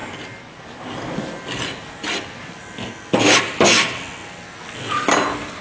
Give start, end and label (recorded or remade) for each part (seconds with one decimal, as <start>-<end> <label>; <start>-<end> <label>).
0.0-5.6 recorded